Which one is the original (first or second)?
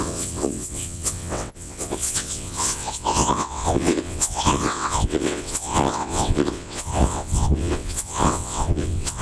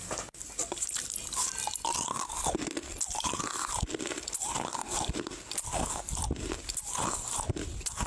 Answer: second